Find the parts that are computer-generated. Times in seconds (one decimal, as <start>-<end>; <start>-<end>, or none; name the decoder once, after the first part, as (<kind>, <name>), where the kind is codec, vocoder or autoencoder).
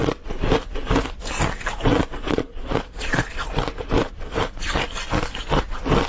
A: 2.0-3.3 (vocoder, Vocos)